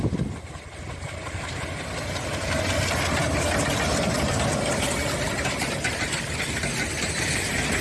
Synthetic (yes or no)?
no